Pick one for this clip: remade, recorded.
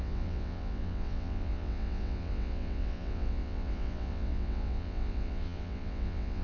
remade